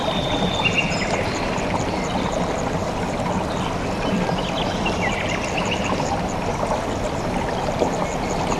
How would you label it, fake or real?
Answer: real